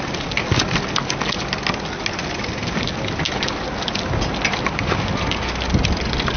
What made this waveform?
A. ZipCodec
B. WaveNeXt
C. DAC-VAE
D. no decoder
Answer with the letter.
D